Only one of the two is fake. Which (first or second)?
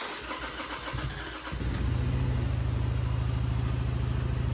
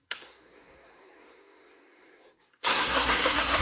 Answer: second